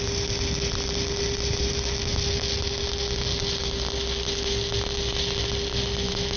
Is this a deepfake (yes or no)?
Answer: no